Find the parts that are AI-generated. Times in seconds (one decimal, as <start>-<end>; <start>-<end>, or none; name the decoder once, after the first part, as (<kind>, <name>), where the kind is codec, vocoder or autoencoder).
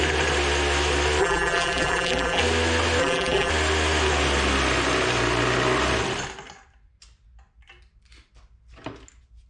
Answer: 1.2-2.4 (vocoder, BigVGAN v2); 3.0-3.5